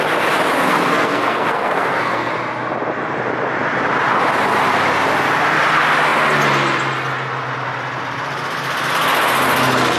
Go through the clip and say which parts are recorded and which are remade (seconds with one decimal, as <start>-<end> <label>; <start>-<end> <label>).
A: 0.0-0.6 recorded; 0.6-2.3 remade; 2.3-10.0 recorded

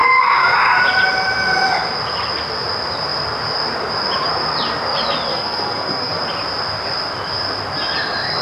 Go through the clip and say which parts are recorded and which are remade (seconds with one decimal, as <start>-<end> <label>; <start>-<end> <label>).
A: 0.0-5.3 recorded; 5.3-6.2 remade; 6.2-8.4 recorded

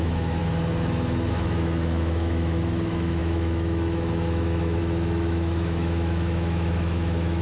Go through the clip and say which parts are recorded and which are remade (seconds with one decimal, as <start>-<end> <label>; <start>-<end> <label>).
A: 0.0-0.4 remade; 0.4-1.3 recorded; 1.3-7.4 remade

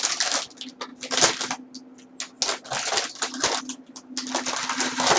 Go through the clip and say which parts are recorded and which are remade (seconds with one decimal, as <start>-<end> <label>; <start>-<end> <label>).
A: 0.0-5.2 recorded

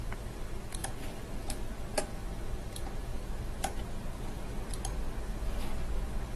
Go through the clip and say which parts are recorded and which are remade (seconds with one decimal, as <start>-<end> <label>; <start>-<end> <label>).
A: 0.0-3.1 recorded; 3.1-4.5 remade; 4.5-6.4 recorded

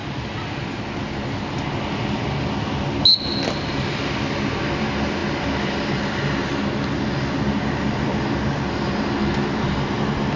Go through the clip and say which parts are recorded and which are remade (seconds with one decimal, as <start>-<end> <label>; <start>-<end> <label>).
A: 0.0-10.4 recorded

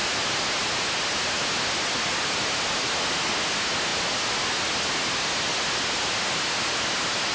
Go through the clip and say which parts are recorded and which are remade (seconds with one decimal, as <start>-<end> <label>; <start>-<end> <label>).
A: 0.0-7.3 recorded